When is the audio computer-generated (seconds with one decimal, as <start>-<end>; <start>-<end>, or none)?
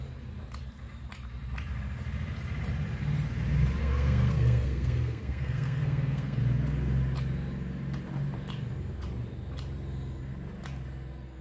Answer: 3.8-6.4